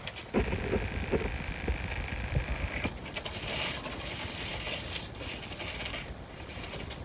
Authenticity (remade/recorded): recorded